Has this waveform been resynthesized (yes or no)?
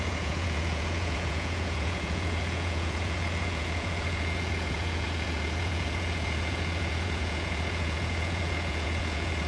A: yes